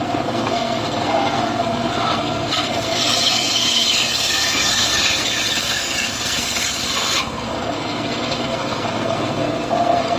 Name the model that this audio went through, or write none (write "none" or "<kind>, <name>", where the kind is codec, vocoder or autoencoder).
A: codec, SNAC